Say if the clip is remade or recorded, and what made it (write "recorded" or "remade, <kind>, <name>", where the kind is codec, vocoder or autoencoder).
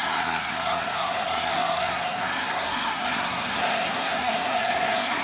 remade, codec, SNAC